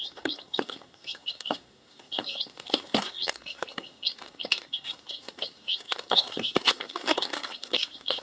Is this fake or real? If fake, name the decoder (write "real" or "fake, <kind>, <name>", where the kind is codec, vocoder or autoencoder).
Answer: fake, codec, SNAC